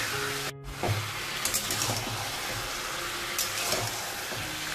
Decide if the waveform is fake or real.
real